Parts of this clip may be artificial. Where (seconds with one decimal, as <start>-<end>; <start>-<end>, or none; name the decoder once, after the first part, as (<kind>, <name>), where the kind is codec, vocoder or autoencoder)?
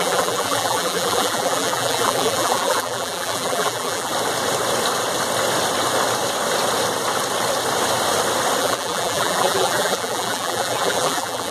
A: 0.0-4.1 (vocoder, BigVGAN v2); 8.6-11.5